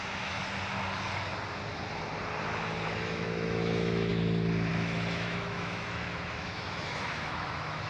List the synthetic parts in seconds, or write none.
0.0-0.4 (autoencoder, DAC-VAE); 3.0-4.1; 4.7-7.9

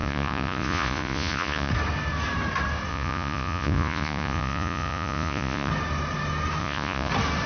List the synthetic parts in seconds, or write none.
0.0-1.7 (vocoder, Vocos); 2.9-5.7; 6.6-7.1

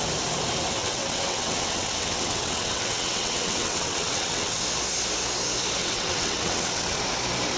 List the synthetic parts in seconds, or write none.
0.8-4.6 (vocoder, WaveNeXt); 5.8-7.0

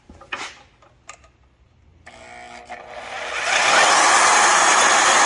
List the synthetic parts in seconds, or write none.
none

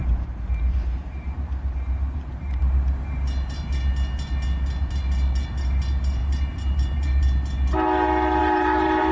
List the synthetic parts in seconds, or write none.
0.0-2.6 (vocoder, BigVGAN v2); 6.2-7.2; 8.4-9.1